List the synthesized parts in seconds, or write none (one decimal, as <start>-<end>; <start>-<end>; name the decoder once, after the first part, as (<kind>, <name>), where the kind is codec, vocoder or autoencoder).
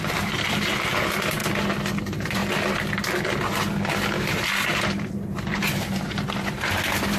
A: 0.0-1.4 (vocoder, BigVGAN v2); 2.0-2.4; 4.2-7.2